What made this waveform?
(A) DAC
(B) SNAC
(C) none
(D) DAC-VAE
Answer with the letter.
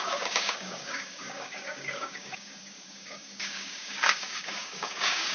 A